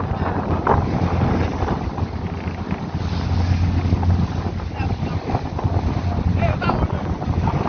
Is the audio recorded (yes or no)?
yes